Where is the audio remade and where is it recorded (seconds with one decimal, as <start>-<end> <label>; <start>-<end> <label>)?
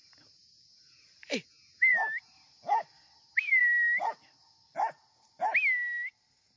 0.0-6.6 recorded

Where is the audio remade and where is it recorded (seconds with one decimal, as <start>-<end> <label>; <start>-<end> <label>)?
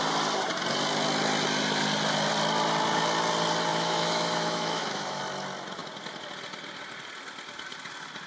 0.0-3.7 recorded; 3.7-5.2 remade; 5.2-8.3 recorded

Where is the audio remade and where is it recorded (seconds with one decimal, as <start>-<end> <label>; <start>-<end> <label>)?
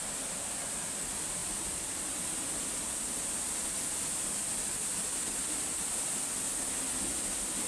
0.0-7.7 recorded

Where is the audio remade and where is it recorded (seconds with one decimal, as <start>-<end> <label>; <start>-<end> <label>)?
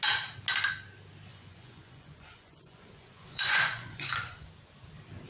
0.0-1.3 recorded; 1.3-4.5 remade; 4.5-5.3 recorded